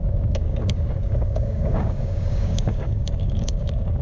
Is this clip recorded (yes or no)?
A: no